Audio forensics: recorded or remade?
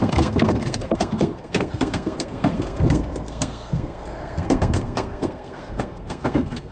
remade